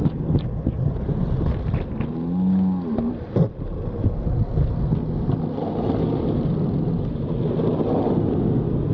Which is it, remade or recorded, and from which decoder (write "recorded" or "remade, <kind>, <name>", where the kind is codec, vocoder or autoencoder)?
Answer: recorded